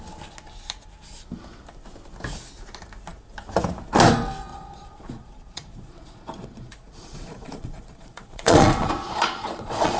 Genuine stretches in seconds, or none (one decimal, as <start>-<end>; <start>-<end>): 0.0-4.5